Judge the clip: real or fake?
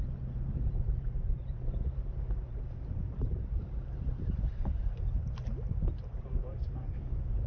fake